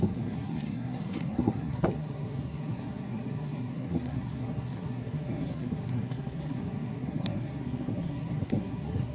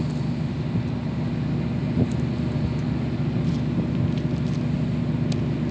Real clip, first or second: second